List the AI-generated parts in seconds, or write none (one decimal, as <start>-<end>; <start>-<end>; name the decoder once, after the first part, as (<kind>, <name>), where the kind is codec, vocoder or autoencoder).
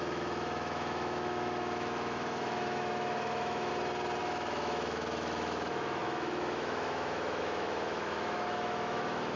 0.0-3.7 (autoencoder, DAC-VAE); 4.2-9.4